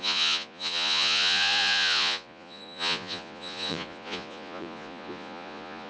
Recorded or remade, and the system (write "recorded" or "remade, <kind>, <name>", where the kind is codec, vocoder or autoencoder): remade, vocoder, Vocos